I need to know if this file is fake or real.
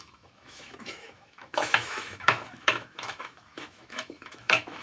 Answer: fake